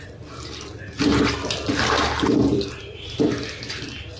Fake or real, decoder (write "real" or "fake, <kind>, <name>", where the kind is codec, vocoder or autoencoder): fake, vocoder, BigVGAN v2